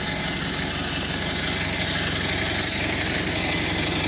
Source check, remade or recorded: recorded